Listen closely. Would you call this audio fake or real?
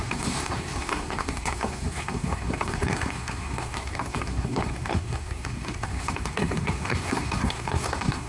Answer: fake